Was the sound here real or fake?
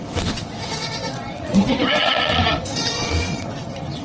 fake